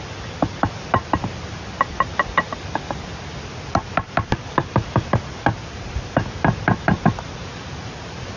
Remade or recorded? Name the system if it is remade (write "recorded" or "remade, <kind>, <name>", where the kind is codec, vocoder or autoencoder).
recorded